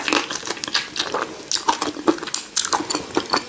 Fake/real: real